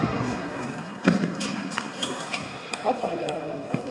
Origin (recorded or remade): remade